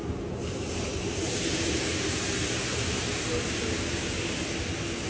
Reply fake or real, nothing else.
real